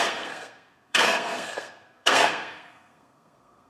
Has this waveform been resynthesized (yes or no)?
yes